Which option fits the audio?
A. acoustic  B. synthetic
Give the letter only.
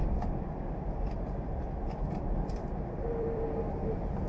B